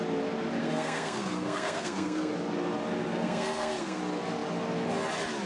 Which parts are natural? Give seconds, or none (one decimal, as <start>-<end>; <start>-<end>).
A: 0.0-0.6; 2.3-3.1; 4.0-5.5